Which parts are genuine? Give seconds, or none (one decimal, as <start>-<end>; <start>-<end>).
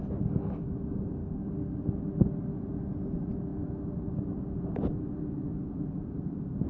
0.0-1.2; 1.7-6.7